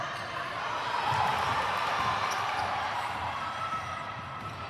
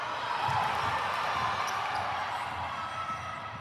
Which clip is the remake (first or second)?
first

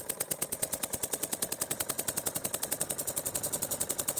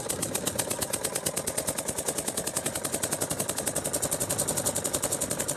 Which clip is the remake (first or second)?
first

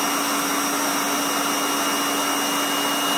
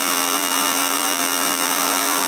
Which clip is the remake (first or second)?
second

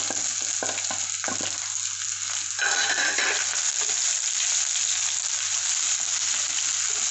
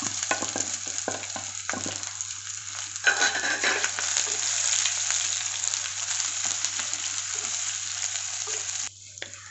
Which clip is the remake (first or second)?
second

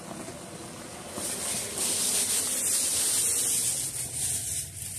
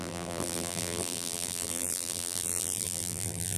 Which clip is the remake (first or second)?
second